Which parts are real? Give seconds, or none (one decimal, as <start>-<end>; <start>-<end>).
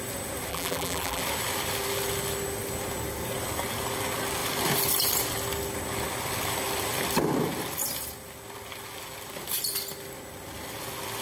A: 0.0-0.5; 1.2-11.2